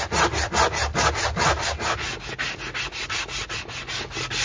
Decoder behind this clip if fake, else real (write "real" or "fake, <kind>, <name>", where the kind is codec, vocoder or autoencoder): real